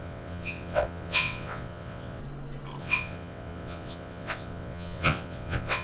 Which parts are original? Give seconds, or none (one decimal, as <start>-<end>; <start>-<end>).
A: 2.2-2.8